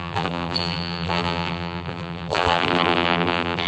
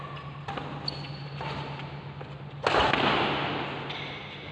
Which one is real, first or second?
second